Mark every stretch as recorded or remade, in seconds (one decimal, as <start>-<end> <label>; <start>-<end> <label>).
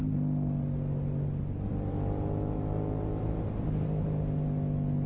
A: 0.0-5.1 recorded